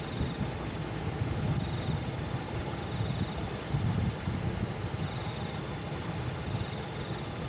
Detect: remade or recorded recorded